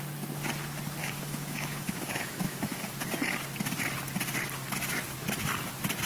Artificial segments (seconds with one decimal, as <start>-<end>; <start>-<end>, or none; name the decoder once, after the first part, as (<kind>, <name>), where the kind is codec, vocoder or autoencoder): 1.0-2.9 (autoencoder, DAC-VAE)